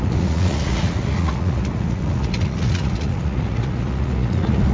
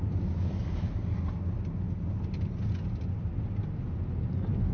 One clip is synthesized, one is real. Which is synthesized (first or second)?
first